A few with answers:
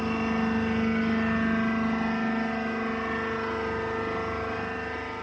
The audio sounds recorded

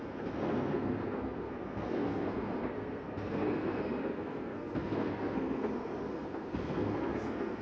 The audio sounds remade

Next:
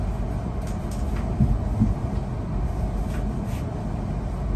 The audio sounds recorded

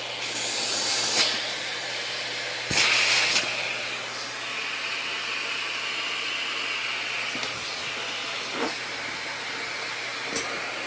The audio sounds recorded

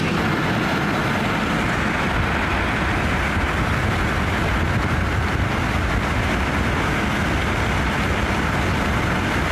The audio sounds recorded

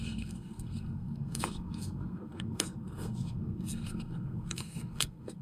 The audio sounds remade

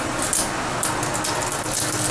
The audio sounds recorded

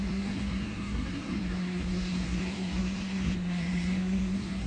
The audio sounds remade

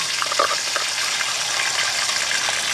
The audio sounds recorded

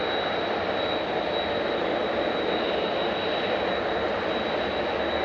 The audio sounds recorded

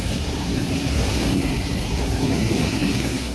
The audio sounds remade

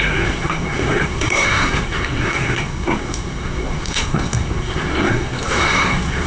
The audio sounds remade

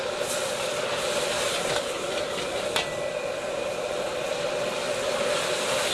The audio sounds recorded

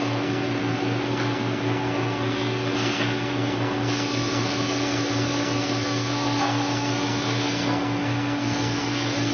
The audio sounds remade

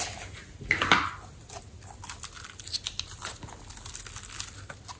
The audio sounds recorded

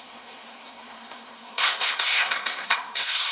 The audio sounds remade